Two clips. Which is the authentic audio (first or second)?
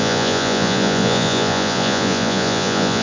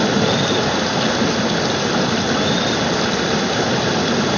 second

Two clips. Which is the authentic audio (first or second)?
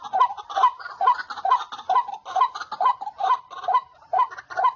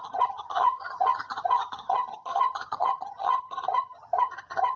first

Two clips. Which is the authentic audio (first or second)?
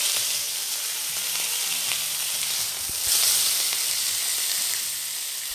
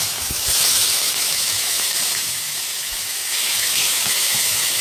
first